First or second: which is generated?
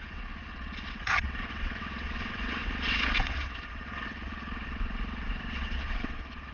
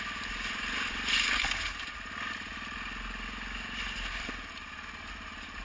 first